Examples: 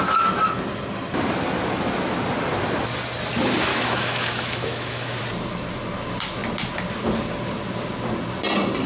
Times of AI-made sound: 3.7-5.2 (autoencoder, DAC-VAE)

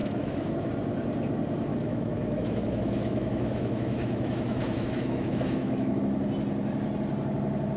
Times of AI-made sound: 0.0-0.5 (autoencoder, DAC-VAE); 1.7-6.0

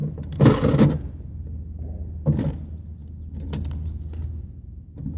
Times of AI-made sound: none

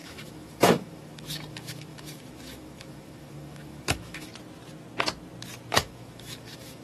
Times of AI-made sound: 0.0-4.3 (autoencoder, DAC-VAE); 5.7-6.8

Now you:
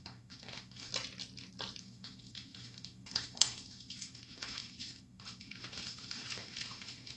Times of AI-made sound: 0.0-0.9 (autoencoder, DAC-VAE); 1.8-7.2

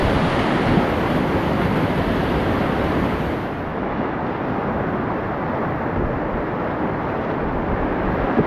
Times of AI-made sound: 3.7-4.2 (autoencoder, DAC-VAE)